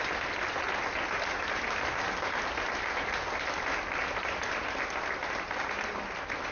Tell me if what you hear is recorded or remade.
recorded